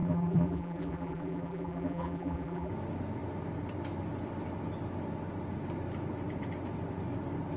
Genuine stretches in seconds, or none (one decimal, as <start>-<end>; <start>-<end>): 2.7-7.6